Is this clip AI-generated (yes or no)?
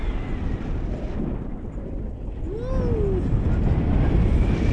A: no